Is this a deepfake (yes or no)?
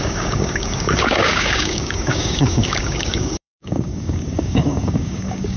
yes